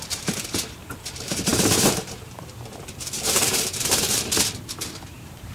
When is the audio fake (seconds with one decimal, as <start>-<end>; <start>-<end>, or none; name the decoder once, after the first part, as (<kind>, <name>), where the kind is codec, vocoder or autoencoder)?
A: 0.0-5.5 (vocoder, BigVGAN v2)